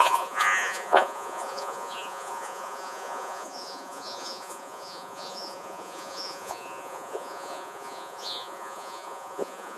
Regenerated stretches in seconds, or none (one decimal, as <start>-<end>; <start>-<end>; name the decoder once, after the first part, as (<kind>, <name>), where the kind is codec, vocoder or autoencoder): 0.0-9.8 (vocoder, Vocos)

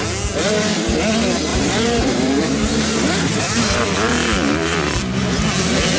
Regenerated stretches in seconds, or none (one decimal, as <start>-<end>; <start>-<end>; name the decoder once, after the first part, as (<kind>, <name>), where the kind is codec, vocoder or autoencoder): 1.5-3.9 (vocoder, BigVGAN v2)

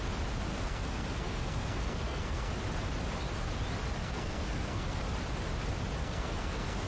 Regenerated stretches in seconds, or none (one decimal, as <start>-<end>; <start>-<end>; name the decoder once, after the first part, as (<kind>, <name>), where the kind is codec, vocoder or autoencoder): 0.5-2.5 (codec, SNAC); 4.0-5.0; 6.0-6.9

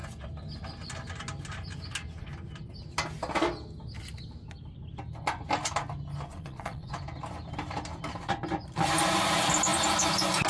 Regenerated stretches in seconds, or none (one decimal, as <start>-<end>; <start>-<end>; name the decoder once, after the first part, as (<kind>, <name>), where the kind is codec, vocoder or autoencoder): 6.3-6.9 (vocoder, Vocos)

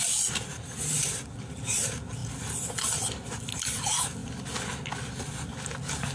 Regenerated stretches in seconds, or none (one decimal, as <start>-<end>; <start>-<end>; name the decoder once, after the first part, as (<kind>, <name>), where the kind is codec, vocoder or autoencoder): 0.5-1.8 (vocoder, BigVGAN v2)